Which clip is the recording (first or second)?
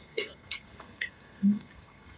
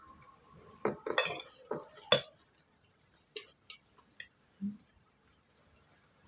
second